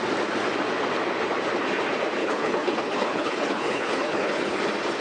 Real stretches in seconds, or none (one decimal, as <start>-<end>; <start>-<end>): 0.0-2.2; 4.6-5.0